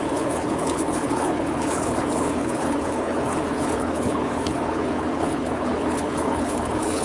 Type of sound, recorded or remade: remade